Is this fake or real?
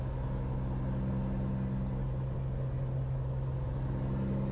real